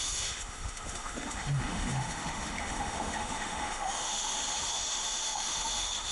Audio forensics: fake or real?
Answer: fake